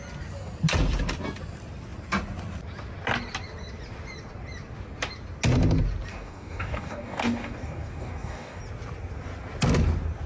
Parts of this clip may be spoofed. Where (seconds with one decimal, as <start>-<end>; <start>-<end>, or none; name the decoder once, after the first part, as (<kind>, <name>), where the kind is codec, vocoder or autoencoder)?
6.1-8.6 (codec, DAC)

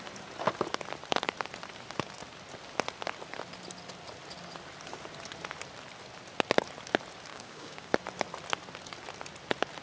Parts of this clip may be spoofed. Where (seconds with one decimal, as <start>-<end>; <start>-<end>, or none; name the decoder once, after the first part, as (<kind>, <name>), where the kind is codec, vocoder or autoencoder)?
7.3-7.9 (codec, DAC)

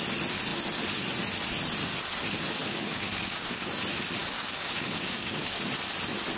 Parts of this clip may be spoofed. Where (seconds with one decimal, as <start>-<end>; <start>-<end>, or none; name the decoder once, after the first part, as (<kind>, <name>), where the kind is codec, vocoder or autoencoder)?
2.6-3.7 (codec, DAC); 4.2-5.6

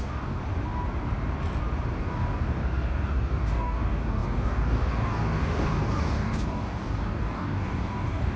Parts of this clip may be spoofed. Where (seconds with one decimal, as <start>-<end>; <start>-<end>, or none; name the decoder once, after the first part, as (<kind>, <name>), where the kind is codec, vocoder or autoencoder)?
0.0-0.4 (codec, DAC); 2.0-8.4

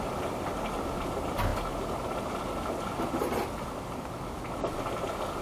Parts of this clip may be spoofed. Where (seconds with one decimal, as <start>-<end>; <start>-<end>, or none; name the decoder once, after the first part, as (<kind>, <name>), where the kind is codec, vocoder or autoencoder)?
none

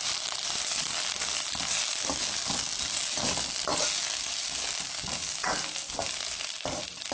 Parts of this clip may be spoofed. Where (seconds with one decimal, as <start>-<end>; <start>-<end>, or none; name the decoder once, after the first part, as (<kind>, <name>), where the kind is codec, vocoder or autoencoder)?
none

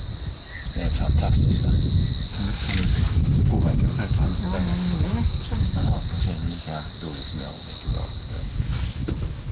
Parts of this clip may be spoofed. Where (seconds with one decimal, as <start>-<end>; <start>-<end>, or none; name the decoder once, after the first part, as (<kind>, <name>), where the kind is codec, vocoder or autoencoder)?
2.3-4.0 (codec, DAC); 5.1-9.1